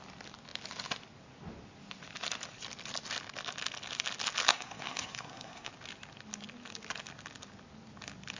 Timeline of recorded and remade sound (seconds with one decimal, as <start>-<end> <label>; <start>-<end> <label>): 0.0-4.5 recorded; 4.5-5.7 remade; 5.7-8.4 recorded